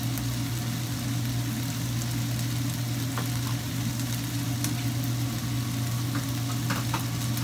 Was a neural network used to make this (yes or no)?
no